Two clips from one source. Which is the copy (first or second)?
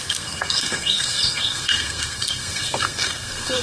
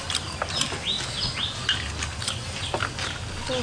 first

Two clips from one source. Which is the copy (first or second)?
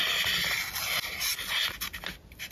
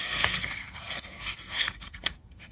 second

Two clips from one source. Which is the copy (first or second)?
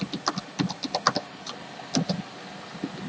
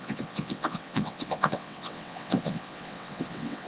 second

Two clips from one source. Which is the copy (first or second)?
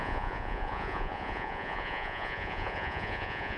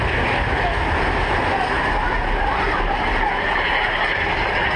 first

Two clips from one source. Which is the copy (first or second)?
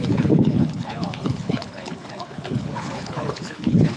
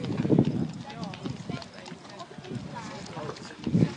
first